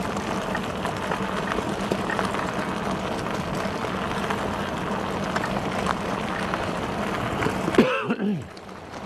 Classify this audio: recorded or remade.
recorded